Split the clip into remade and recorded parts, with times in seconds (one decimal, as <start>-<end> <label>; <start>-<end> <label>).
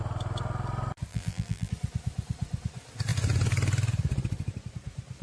0.0-1.1 recorded; 1.1-1.7 remade; 1.7-5.2 recorded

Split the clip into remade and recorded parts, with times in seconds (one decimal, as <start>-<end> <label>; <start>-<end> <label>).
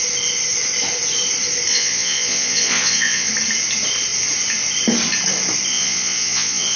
0.0-1.7 recorded; 1.7-3.3 remade; 3.3-5.7 recorded; 5.7-6.8 remade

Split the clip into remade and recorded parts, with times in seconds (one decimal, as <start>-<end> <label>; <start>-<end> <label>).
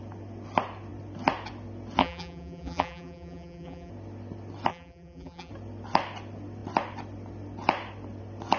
0.0-2.0 recorded; 2.0-3.9 remade; 3.9-4.7 recorded; 4.7-5.5 remade; 5.5-8.6 recorded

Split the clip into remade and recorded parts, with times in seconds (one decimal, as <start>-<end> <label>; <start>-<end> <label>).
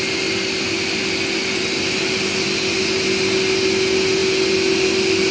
0.0-5.3 recorded